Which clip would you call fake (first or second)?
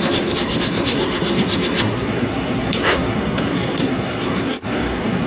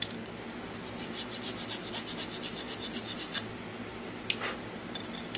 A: first